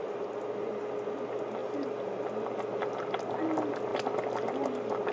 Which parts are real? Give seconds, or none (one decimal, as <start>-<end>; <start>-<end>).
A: 0.0-1.6; 2.3-3.9; 4.5-5.1